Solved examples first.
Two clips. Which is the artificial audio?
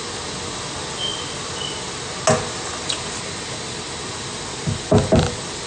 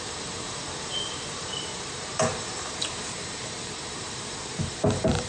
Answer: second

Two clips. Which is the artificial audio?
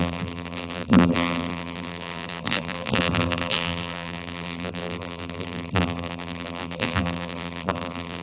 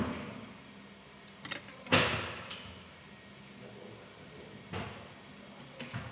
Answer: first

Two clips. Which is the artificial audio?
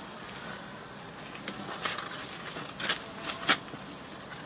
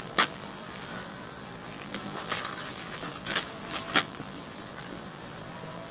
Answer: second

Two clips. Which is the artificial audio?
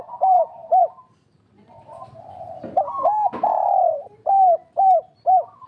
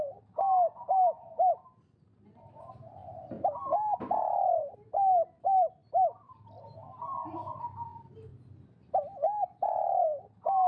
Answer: first